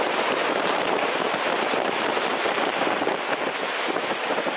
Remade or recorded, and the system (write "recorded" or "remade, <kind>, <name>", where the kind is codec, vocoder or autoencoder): remade, vocoder, BigVGAN v2